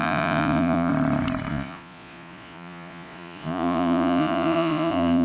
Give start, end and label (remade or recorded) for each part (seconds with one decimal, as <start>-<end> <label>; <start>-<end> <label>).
0.0-0.9 remade; 0.9-1.5 recorded; 1.5-5.2 remade